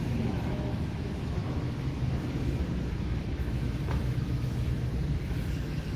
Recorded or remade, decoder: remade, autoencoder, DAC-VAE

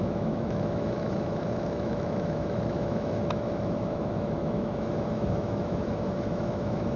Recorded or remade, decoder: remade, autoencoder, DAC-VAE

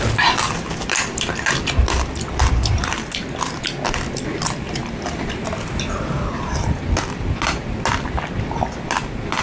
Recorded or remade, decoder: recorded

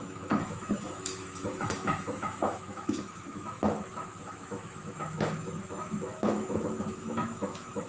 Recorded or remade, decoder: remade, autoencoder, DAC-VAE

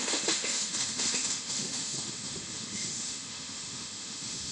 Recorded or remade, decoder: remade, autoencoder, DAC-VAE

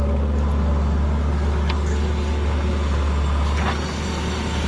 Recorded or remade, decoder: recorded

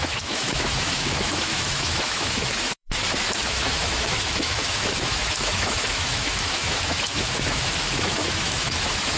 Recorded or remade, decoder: remade, autoencoder, DAC-VAE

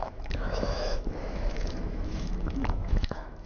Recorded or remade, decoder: remade, autoencoder, DAC-VAE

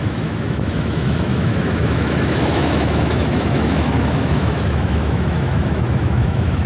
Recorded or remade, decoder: remade, autoencoder, DAC-VAE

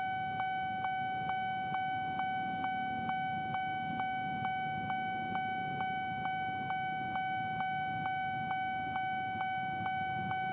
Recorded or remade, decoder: recorded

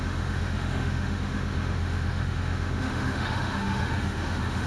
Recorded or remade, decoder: remade, autoencoder, DAC-VAE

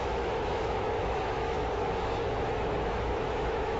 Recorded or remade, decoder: remade, autoencoder, DAC-VAE